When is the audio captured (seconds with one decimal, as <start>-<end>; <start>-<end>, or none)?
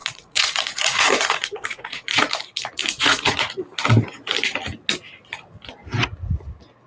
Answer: 2.3-2.8; 3.5-6.9